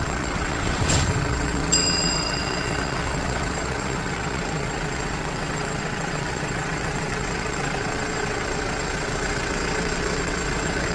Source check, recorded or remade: remade